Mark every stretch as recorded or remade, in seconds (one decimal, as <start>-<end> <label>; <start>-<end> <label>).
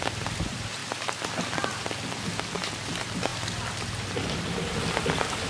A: 0.0-0.8 remade; 0.8-2.7 recorded; 2.7-5.5 remade